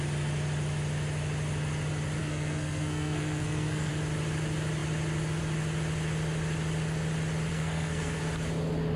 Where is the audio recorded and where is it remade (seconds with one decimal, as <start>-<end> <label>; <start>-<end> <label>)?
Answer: 0.0-2.2 recorded; 2.2-3.9 remade; 3.9-7.5 recorded; 7.5-8.2 remade; 8.2-9.0 recorded